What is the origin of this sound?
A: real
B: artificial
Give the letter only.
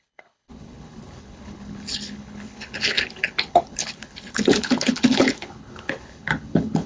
B